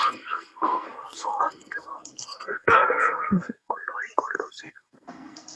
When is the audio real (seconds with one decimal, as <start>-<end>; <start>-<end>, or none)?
3.8-4.5